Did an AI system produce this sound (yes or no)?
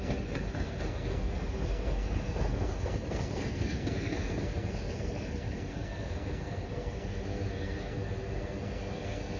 yes